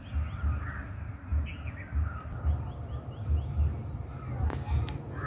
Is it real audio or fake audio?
real